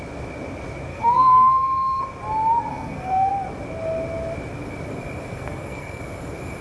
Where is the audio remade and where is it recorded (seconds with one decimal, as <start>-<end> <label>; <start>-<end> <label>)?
0.0-0.9 recorded; 0.9-2.0 remade; 2.0-2.7 recorded; 2.7-3.3 remade; 3.3-5.3 recorded; 5.3-6.0 remade; 6.0-6.6 recorded